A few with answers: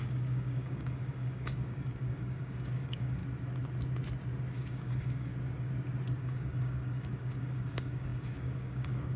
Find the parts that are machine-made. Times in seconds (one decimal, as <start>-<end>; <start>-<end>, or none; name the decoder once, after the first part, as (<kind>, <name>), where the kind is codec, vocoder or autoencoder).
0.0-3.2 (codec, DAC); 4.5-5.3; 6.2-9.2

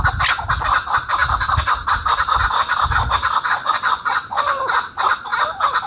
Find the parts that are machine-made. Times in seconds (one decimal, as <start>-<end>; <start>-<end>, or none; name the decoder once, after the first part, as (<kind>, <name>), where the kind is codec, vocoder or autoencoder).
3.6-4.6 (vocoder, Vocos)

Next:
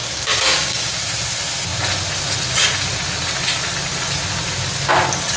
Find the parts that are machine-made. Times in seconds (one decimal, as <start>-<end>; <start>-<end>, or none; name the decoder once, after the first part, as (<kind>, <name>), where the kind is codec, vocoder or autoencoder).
0.0-0.9 (codec, DAC)

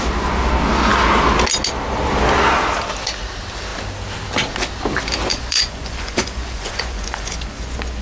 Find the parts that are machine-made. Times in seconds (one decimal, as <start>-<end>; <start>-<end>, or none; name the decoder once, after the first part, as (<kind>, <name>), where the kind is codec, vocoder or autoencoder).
5.3-8.0 (vocoder, Vocos)

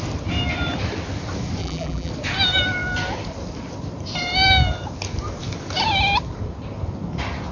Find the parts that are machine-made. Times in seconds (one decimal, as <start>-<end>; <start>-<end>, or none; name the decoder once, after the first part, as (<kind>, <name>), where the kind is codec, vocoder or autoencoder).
1.6-2.1 (vocoder, BigVGAN v2)